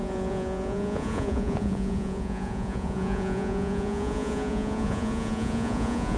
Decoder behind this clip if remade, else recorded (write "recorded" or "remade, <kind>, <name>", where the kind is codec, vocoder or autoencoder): remade, vocoder, Vocos